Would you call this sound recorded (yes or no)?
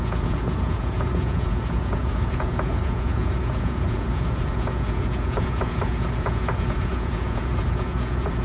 no